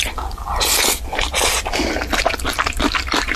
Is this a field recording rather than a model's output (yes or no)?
yes